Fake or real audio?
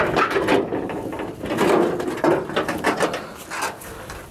real